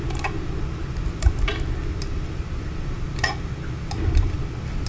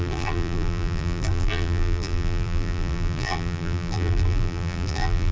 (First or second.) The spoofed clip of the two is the second